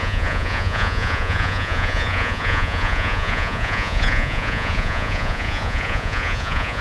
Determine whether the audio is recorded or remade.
remade